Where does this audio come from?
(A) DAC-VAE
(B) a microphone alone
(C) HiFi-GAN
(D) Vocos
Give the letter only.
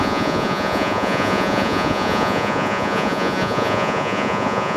D